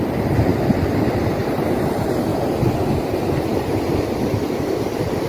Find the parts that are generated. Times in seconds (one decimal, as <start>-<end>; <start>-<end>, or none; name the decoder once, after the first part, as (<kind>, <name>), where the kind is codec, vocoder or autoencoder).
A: 2.3-3.0 (vocoder, BigVGAN v2); 3.5-4.3